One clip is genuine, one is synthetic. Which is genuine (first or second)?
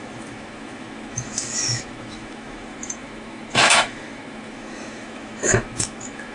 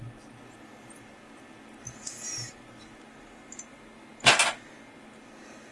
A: second